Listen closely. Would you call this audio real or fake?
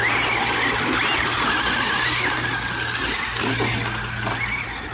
real